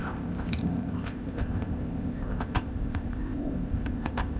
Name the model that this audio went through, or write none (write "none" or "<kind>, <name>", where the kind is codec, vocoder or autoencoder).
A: codec, ZipCodec